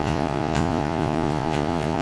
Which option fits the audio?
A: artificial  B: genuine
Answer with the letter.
A